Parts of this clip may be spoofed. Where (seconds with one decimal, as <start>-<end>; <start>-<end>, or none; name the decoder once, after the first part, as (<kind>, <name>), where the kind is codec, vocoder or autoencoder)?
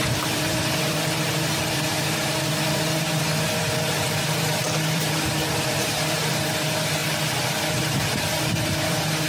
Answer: 0.0-7.0 (vocoder, BigVGAN v2); 7.8-9.3